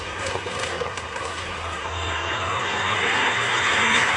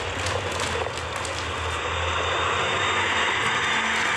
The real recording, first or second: second